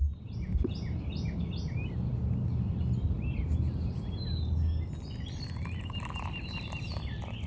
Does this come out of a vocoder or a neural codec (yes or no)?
no